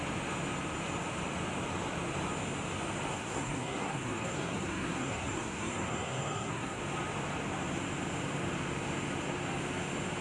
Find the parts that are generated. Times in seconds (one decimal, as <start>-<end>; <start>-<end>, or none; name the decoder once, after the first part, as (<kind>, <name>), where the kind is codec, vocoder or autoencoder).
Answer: 3.1-6.8 (codec, SNAC)